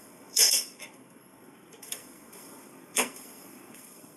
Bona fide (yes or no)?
no